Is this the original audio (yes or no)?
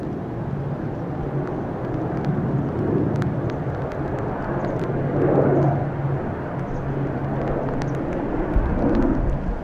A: yes